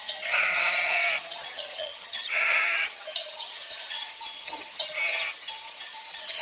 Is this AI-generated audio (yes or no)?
yes